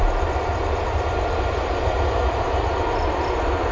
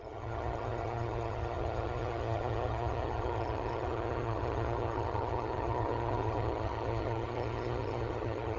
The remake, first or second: second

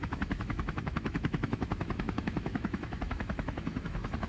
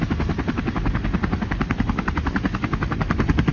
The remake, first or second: first